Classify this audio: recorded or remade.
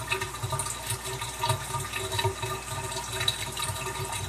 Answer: recorded